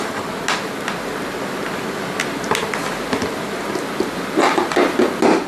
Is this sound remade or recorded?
recorded